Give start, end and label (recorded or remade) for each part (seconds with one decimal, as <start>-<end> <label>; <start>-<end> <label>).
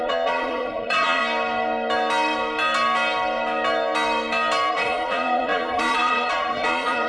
0.0-1.2 remade; 1.2-4.7 recorded; 4.7-7.1 remade